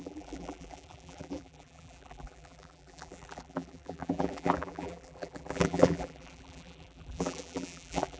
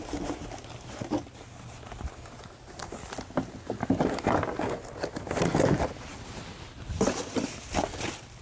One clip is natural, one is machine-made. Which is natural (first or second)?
second